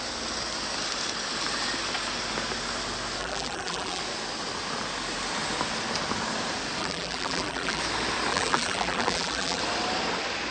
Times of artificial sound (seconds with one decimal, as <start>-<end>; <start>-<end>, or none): 3.2-4.0; 6.8-7.8; 8.3-9.6